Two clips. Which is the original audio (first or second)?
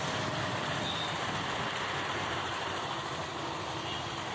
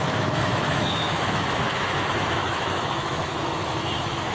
first